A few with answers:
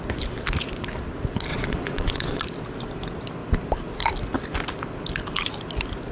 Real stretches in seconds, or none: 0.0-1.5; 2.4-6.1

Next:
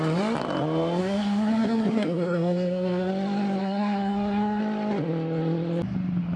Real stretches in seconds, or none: 0.0-1.0; 3.1-3.6; 4.6-6.4

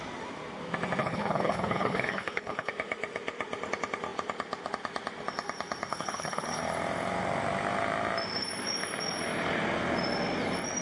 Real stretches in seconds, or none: 0.0-1.0; 2.7-5.9; 6.6-10.8

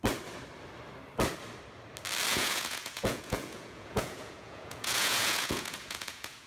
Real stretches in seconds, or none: 0.0-2.3

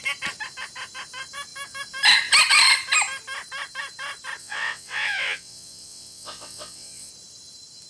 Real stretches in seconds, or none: 0.0-4.4; 7.1-7.9

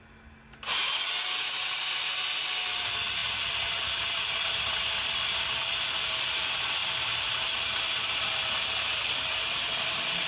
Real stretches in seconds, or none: 0.0-6.8; 7.6-10.3

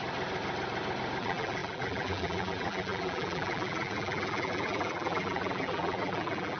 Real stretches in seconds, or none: 0.0-1.2